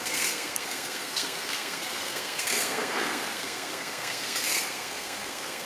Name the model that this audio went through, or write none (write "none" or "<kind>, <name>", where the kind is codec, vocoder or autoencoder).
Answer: codec, SNAC